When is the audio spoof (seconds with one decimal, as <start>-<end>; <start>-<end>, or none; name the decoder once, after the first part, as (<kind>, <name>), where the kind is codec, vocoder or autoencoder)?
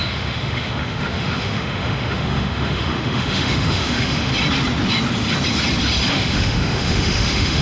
0.0-4.3 (autoencoder, DAC-VAE); 6.1-7.6